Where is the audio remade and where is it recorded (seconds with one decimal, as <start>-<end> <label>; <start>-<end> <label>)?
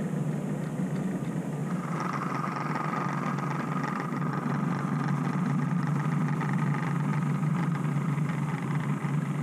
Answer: 0.0-9.4 recorded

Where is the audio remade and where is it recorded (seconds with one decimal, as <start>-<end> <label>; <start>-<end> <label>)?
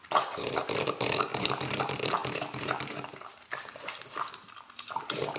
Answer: 0.0-5.4 remade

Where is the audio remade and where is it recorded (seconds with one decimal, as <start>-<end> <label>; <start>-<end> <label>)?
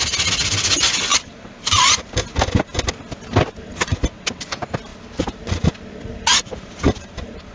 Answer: 0.0-1.1 recorded; 1.1-1.8 remade; 1.8-7.5 recorded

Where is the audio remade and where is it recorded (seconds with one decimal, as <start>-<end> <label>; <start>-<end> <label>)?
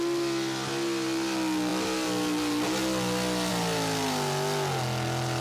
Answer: 0.0-5.4 recorded